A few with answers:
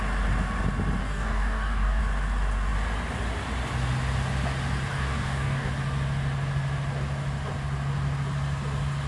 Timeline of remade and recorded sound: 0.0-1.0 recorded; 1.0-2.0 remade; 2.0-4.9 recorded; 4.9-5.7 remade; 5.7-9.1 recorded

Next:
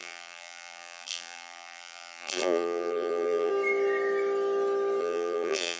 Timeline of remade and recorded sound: 0.0-3.5 remade; 3.5-5.0 recorded; 5.0-5.8 remade

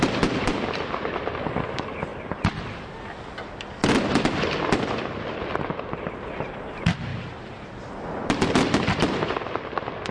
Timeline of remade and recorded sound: 0.0-7.1 recorded; 7.1-7.8 remade; 7.8-10.1 recorded

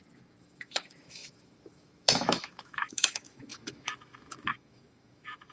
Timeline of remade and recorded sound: 0.0-5.5 remade